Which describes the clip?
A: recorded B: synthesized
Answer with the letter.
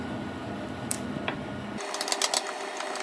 A